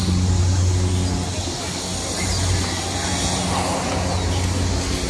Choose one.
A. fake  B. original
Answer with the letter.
B